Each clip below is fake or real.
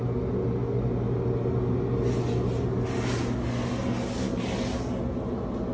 real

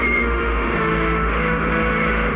fake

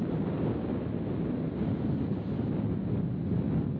real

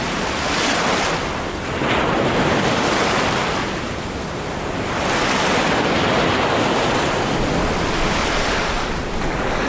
real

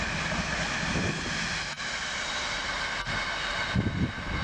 real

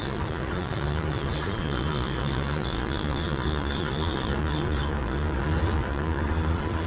fake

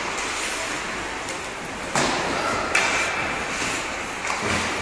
real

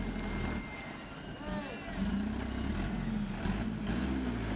real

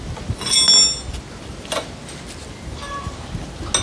real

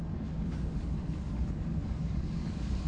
fake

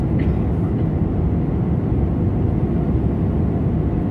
real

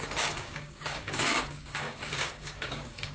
fake